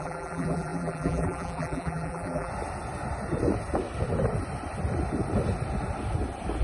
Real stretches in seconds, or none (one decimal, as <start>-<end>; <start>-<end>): 2.5-6.6